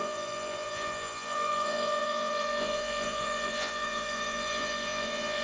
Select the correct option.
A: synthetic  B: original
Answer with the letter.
A